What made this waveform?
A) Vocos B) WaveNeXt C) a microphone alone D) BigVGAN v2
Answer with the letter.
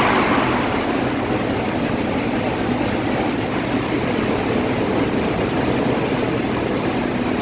C